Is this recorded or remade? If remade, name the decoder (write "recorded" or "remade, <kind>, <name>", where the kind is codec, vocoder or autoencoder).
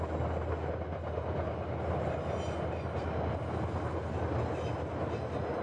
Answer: recorded